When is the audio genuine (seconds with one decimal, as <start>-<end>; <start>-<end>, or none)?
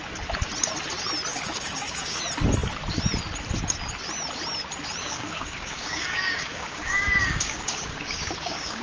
0.0-1.3; 2.2-5.0